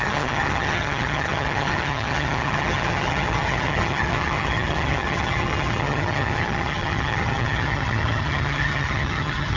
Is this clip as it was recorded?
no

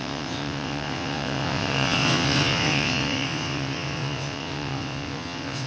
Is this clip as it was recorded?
no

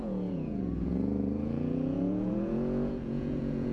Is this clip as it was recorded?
no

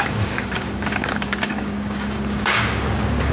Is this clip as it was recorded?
no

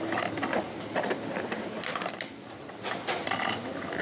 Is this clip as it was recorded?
yes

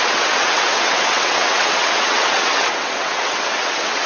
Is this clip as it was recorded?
no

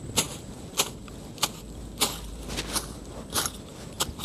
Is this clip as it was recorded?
yes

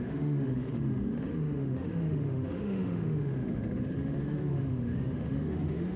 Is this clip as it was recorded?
no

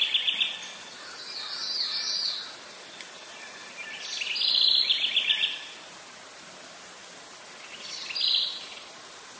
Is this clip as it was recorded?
yes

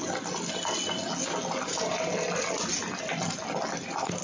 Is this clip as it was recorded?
yes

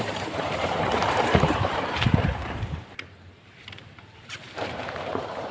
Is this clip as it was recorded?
no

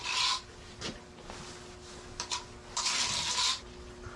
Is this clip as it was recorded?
yes